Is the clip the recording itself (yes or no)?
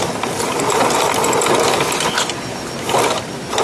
yes